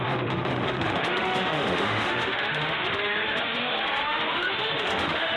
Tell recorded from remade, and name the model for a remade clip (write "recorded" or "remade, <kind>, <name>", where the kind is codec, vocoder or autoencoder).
remade, autoencoder, DAC-VAE